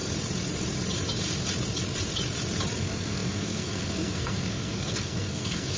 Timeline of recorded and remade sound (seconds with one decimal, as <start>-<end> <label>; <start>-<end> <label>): 0.0-2.8 recorded; 2.8-5.8 remade